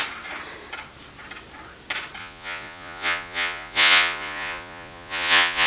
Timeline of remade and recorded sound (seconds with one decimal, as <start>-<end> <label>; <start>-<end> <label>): 0.0-2.2 recorded; 2.2-5.7 remade